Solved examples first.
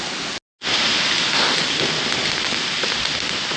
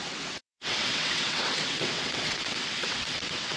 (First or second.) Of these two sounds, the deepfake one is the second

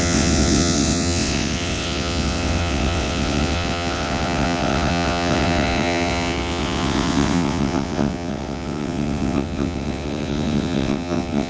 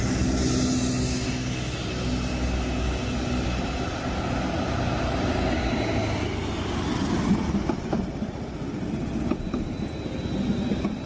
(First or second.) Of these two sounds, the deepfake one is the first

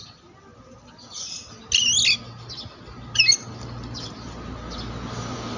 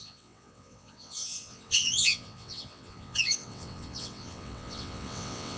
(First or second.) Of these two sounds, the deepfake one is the second